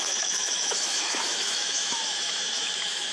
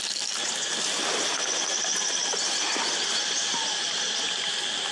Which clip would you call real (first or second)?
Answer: second